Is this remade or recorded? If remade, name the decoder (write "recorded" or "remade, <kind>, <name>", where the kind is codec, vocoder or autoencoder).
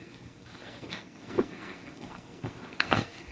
remade, codec, SNAC